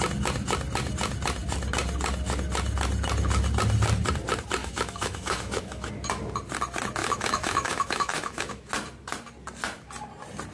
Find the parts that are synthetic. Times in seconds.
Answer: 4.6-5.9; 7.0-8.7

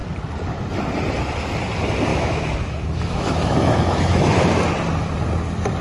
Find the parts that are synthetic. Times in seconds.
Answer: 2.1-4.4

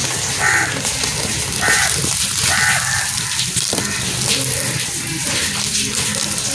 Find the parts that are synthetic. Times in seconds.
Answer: none